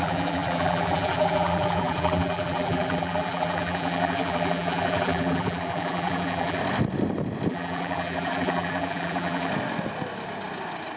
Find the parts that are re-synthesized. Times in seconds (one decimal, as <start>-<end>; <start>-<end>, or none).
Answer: 0.0-6.6; 7.5-9.5